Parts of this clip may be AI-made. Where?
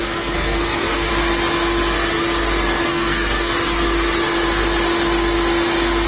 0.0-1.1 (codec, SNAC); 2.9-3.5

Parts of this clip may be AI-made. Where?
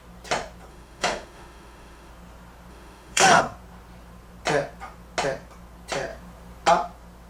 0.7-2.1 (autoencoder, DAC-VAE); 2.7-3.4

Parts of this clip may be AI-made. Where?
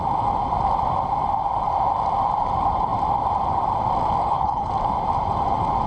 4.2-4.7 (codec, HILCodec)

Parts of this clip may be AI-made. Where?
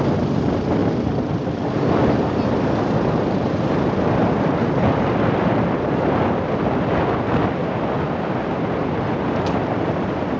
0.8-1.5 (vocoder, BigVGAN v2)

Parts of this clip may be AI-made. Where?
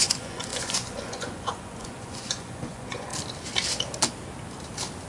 0.0-3.1 (vocoder, Vocos)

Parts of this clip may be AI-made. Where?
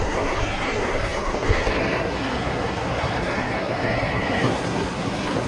0.0-5.5 (codec, SNAC)